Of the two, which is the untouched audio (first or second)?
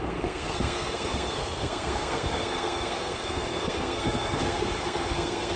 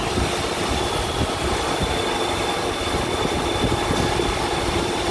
second